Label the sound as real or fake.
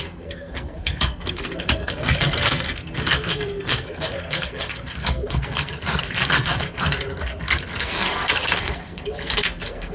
fake